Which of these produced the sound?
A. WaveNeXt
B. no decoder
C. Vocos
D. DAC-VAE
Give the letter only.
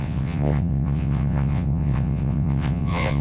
A